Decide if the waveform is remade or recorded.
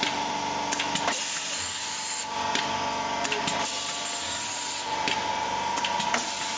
recorded